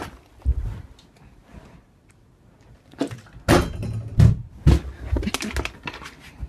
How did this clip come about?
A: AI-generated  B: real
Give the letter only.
B